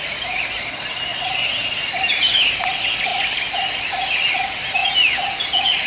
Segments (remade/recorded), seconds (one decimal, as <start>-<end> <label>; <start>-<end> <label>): 0.0-1.1 recorded; 1.1-2.0 remade; 2.0-3.1 recorded; 3.1-3.9 remade; 3.9-5.9 recorded